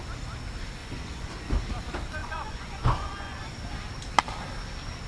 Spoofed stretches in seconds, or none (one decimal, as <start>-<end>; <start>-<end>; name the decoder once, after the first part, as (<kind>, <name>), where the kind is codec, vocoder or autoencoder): 0.8-1.3 (vocoder, Vocos); 2.2-3.4